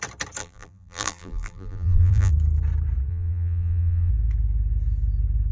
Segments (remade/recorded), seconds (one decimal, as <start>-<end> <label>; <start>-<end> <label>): 0.0-0.4 recorded; 0.4-2.3 remade; 2.3-3.1 recorded; 3.1-4.1 remade; 4.1-5.5 recorded

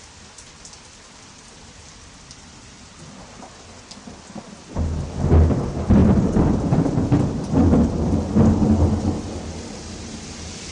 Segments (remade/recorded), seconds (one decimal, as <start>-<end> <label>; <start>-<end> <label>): 0.0-6.0 recorded; 6.0-7.5 remade; 7.5-10.7 recorded

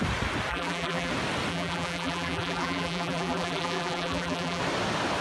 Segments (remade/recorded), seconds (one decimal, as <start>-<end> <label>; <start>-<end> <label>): 0.0-0.5 recorded; 0.5-1.1 remade; 1.1-1.5 recorded; 1.5-4.6 remade; 4.6-5.2 recorded

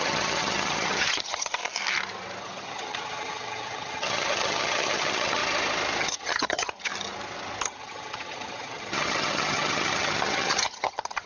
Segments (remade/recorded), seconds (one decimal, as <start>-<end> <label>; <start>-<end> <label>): 0.0-1.6 remade; 1.6-2.4 recorded; 2.4-5.4 remade; 5.4-6.0 recorded; 6.0-6.9 remade; 6.9-7.6 recorded; 7.6-11.3 remade